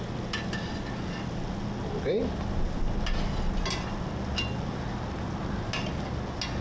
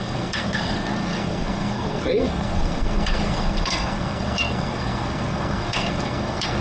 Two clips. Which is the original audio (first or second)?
first